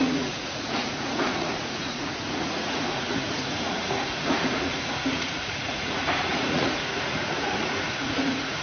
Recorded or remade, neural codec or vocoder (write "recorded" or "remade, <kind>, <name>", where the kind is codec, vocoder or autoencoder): remade, vocoder, Vocos